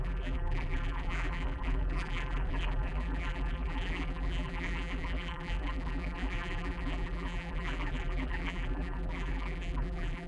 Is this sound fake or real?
fake